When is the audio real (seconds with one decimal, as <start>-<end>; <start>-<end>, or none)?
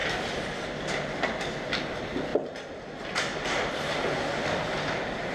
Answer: 0.0-5.3